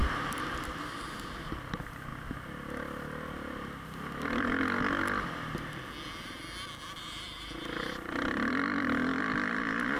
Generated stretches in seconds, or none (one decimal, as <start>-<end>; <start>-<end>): 0.0-2.1; 7.0-10.0